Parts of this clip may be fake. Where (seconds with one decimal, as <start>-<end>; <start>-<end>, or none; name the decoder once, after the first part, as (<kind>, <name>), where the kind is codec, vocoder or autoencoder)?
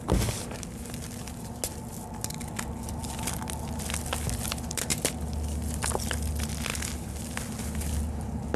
none